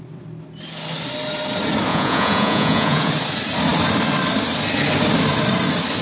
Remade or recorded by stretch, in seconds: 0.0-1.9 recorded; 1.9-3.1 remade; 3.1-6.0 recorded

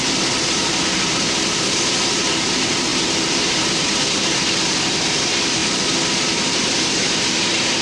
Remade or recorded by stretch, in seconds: 0.0-7.8 remade

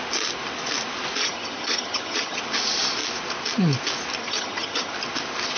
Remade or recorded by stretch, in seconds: 0.0-1.2 recorded; 1.2-2.4 remade; 2.4-4.2 recorded; 4.2-4.9 remade; 4.9-5.6 recorded

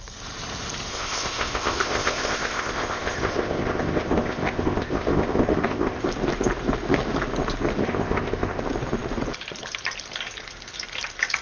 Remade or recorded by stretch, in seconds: 0.0-0.9 recorded; 0.9-6.0 remade; 6.0-7.8 recorded; 7.8-8.6 remade; 8.6-11.4 recorded